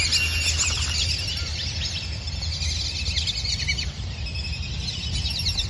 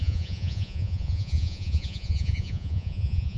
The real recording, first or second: first